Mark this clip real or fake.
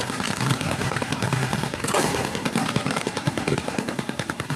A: fake